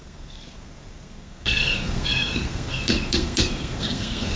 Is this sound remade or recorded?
remade